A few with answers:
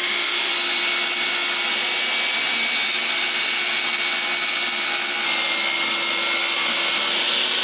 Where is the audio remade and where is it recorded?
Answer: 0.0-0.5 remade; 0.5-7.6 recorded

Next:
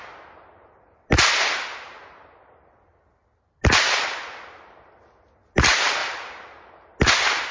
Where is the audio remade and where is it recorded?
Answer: 0.0-7.5 recorded

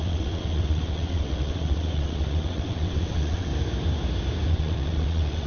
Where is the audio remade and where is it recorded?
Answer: 0.0-3.5 remade; 3.5-4.5 recorded; 4.5-5.5 remade

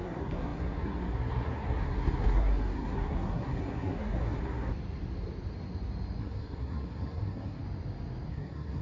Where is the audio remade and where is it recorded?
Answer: 0.0-4.7 remade; 4.7-6.2 recorded; 6.2-7.6 remade; 7.6-8.3 recorded; 8.3-8.8 remade

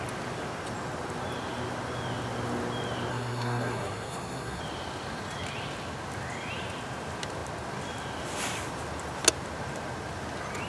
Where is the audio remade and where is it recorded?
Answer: 0.0-3.1 recorded; 3.1-4.6 remade; 4.6-10.7 recorded